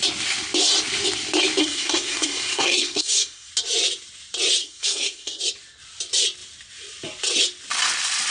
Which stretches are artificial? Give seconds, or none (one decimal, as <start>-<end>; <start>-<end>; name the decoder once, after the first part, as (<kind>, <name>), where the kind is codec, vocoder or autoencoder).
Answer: 1.6-3.5 (codec, SNAC); 4.6-5.4